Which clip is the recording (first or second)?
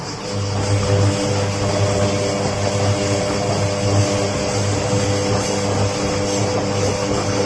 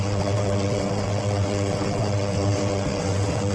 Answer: first